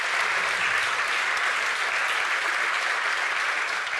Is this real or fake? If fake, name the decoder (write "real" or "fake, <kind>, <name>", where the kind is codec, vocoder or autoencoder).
real